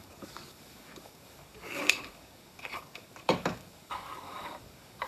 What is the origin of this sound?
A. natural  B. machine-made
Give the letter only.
B